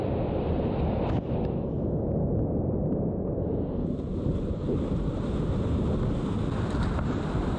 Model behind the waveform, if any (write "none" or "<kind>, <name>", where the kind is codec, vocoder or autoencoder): none